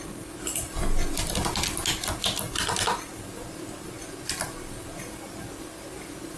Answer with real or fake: real